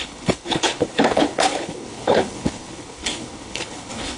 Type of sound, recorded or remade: remade